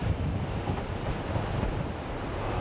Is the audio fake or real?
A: real